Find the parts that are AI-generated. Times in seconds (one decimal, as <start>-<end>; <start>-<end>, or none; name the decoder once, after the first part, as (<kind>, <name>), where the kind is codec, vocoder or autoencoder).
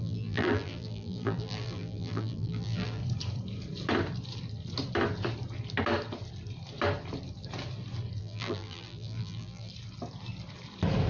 0.0-3.0 (vocoder, BigVGAN v2); 8.2-9.7